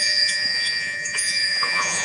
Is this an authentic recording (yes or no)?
no